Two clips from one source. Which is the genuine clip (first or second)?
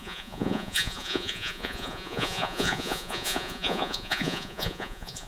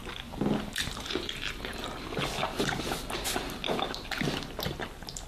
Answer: second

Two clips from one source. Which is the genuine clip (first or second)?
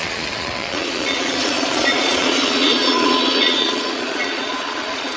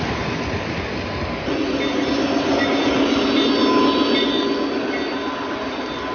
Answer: second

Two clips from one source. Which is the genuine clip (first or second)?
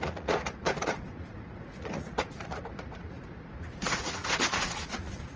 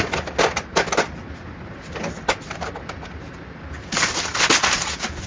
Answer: second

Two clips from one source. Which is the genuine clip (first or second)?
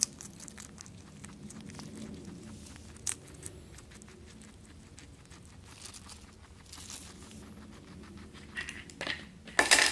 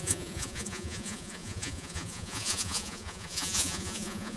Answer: first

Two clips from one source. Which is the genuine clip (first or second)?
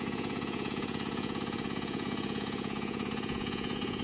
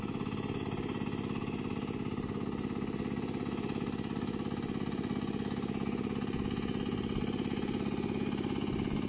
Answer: second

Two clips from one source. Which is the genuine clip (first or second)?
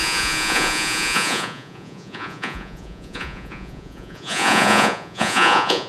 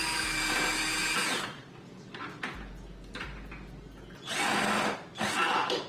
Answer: second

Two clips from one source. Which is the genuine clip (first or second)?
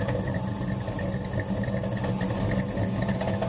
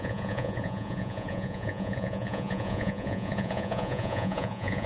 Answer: first